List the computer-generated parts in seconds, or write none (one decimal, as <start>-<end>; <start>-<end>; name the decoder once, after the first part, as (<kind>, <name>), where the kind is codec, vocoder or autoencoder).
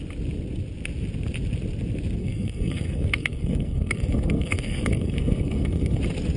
2.2-6.0 (codec, SNAC)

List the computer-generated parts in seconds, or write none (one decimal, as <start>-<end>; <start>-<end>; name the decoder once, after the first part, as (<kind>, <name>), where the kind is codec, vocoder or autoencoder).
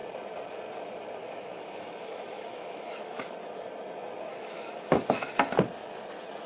1.2-3.3 (autoencoder, DAC-VAE); 4.3-5.3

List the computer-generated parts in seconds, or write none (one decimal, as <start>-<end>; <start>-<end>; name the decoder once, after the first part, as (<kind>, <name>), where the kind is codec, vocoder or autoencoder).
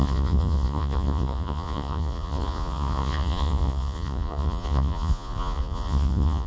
0.0-6.5 (vocoder, Vocos)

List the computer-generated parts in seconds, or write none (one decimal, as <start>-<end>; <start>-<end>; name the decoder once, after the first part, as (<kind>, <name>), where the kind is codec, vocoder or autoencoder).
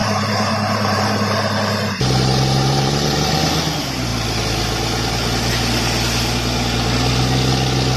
0.0-3.4 (vocoder, BigVGAN v2)